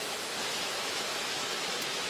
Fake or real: fake